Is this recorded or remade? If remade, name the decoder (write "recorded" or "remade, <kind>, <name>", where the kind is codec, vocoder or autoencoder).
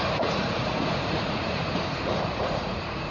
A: remade, vocoder, Vocos